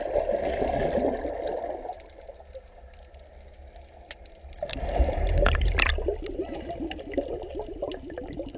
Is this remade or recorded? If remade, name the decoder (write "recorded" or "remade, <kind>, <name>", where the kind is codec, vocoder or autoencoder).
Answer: recorded